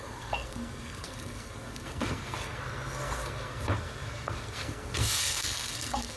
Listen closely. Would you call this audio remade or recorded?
remade